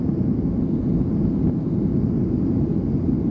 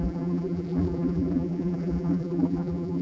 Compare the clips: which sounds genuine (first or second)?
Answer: first